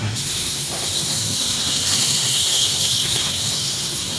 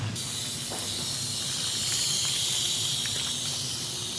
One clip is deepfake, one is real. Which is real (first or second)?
second